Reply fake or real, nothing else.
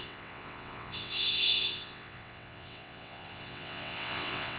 fake